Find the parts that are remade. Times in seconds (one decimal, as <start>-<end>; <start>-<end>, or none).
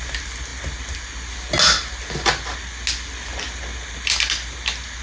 none